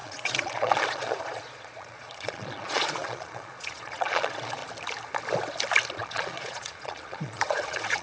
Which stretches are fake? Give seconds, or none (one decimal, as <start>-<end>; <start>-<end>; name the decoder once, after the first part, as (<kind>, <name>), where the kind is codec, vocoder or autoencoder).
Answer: 0.0-4.6 (vocoder, Vocos); 5.9-8.0